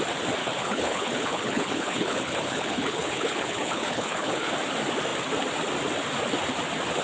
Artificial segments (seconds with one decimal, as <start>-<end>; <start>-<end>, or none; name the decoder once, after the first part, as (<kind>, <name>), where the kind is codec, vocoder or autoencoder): 0.4-4.5 (codec, HILCodec)